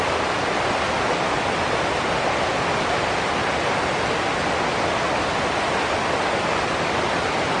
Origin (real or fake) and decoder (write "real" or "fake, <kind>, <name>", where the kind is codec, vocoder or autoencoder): real